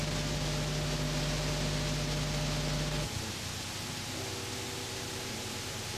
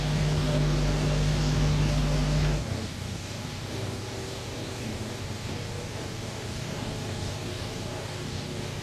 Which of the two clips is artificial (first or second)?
second